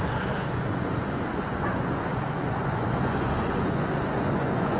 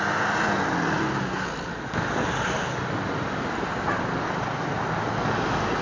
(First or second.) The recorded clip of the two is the second